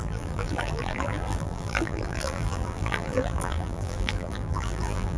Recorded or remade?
remade